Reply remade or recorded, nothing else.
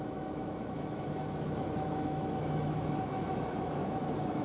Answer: remade